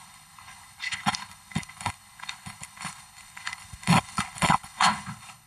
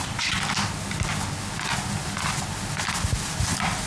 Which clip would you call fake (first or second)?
first